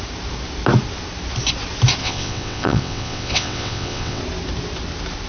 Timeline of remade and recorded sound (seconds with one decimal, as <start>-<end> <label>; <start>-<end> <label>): 0.0-2.0 recorded; 2.0-4.2 remade; 4.2-5.3 recorded